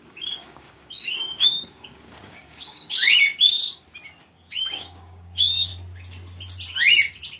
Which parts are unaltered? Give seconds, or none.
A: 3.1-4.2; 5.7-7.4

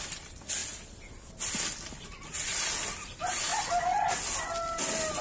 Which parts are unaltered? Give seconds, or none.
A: 0.0-5.2

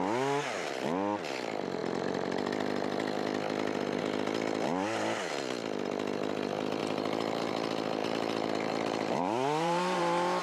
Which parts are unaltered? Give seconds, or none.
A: 0.0-6.8; 7.5-8.0; 10.0-10.4